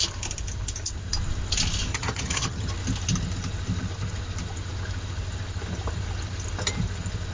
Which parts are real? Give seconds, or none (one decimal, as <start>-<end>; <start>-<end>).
0.0-1.9; 2.7-7.3